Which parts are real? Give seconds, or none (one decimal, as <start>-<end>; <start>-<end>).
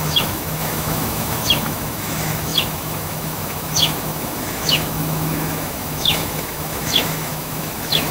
none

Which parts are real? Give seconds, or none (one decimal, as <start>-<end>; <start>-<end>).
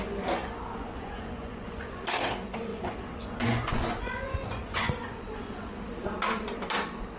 0.0-0.4; 2.0-2.7; 5.7-7.2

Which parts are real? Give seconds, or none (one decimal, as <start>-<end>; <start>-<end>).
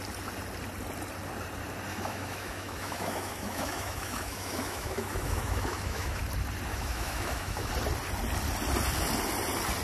0.0-1.9; 6.2-6.7; 7.7-9.8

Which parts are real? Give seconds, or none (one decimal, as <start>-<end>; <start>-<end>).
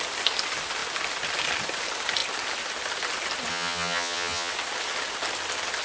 0.0-3.5; 4.5-5.8